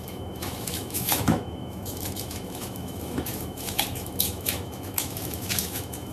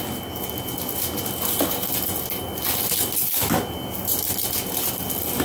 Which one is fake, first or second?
first